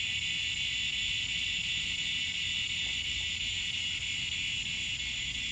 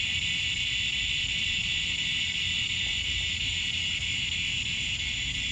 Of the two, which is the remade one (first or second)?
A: second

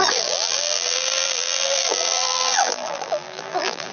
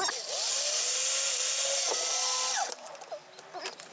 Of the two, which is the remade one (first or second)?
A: first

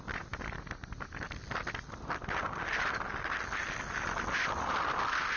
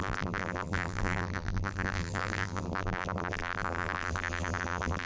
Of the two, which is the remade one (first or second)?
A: second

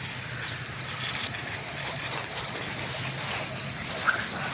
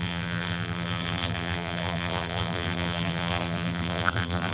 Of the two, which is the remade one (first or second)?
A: second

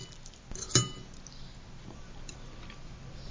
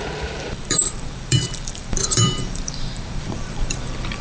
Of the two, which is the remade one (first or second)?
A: second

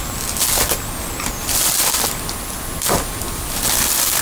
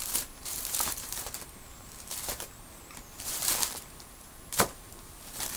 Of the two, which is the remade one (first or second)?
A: second